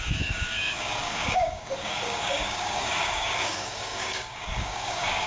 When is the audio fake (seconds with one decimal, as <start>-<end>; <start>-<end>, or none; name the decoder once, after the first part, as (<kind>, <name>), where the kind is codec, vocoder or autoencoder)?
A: 0.0-5.3 (codec, DAC)